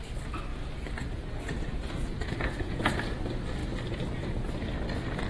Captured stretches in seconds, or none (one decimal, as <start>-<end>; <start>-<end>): 0.0-0.5; 3.2-5.3